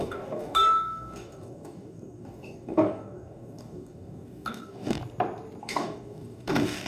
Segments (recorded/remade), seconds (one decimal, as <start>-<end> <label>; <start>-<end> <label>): 0.0-5.0 remade; 5.0-5.6 recorded; 5.6-6.9 remade

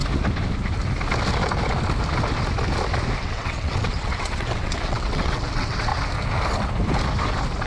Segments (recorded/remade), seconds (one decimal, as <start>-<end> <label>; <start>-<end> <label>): 0.0-3.2 recorded; 3.2-5.9 remade; 5.9-7.7 recorded

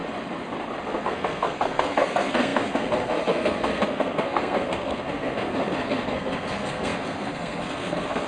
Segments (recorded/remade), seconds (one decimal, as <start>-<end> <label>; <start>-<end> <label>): 0.0-0.8 recorded; 0.8-8.3 remade

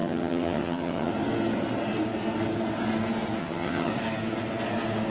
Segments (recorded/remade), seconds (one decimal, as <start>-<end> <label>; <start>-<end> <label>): 0.0-1.1 remade; 1.1-3.4 recorded; 3.4-3.9 remade; 3.9-5.1 recorded